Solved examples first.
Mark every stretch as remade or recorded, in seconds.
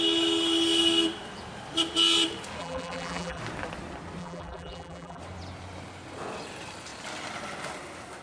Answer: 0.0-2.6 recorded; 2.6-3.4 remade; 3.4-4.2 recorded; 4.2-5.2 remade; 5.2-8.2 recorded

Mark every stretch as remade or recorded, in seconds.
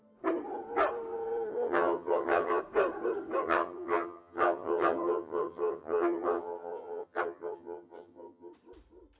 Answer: 0.0-1.5 recorded; 1.5-2.6 remade; 2.6-3.4 recorded; 3.4-8.5 remade; 8.5-9.2 recorded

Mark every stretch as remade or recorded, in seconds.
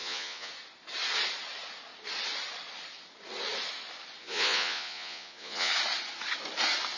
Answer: 0.0-0.5 remade; 0.5-4.2 recorded; 4.2-5.7 remade; 5.7-7.0 recorded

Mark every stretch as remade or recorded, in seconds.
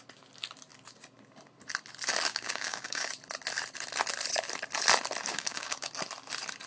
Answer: 0.0-2.3 recorded; 2.3-3.1 remade; 3.1-5.3 recorded; 5.3-5.9 remade; 5.9-6.7 recorded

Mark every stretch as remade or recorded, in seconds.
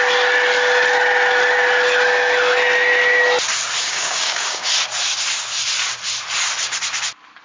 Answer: 0.0-3.8 recorded; 3.8-4.7 remade; 4.7-7.4 recorded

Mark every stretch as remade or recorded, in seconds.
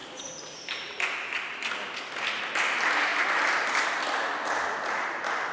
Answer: 0.0-2.6 remade; 2.6-3.1 recorded; 3.1-4.5 remade; 4.5-5.5 recorded